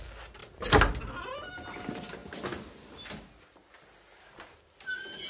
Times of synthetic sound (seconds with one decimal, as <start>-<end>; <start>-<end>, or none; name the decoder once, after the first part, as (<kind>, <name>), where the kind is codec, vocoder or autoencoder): none